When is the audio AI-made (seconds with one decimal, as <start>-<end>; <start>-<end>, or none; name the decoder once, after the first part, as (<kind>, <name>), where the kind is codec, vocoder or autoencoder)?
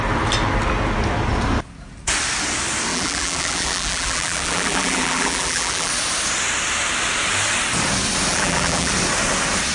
2.9-5.9 (vocoder, BigVGAN v2); 8.3-8.9